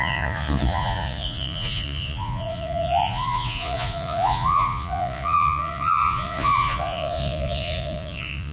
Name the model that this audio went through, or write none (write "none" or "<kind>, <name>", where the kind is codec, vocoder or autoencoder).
vocoder, Vocos